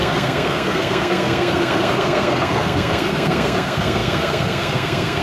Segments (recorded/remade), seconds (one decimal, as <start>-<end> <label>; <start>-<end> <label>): 0.0-5.2 remade